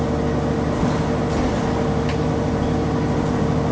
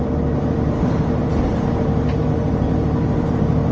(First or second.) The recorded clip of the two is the first